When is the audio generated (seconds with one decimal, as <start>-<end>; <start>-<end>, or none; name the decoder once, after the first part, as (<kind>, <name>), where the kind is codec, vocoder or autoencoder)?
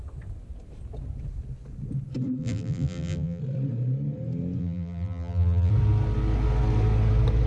2.4-3.4 (vocoder, BigVGAN v2); 4.6-5.7